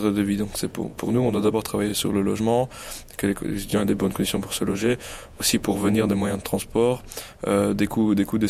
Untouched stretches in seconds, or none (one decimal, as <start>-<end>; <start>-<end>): 0.0-0.9; 1.5-3.7; 6.6-8.5